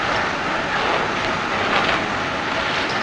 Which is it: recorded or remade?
recorded